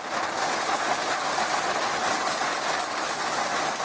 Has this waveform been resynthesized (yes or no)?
no